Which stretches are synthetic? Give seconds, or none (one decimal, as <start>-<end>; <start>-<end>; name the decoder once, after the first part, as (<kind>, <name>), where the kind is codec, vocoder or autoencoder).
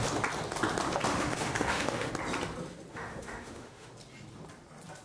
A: 1.1-2.1 (autoencoder, DAC-VAE); 2.9-3.9